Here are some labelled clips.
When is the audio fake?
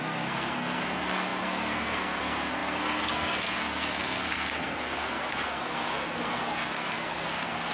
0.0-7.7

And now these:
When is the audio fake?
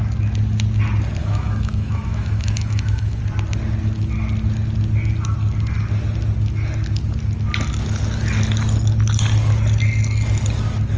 1.2-3.2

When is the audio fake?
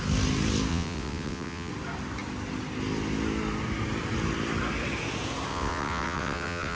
0.7-1.7; 5.5-6.8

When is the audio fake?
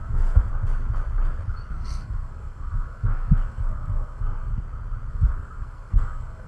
0.0-0.5; 1.7-4.5; 5.1-6.5